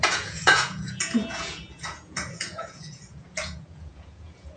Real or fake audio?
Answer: fake